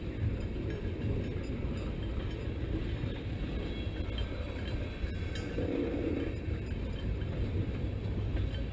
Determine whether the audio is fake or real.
real